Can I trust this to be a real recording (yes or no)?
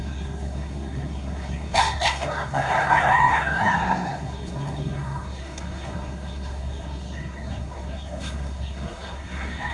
no